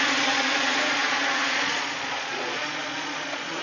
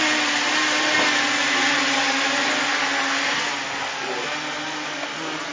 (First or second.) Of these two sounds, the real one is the second